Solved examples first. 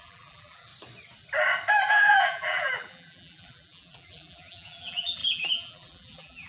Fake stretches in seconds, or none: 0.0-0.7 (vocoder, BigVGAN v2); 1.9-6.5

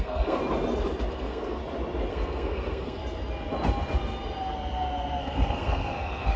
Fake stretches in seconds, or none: 0.0-0.4 (codec, SNAC); 1.1-1.6; 2.1-3.0; 5.2-6.4

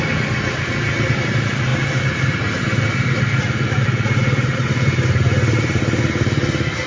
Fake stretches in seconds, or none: none